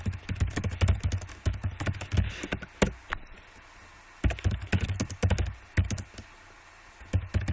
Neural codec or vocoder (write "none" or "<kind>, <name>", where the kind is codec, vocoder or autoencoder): none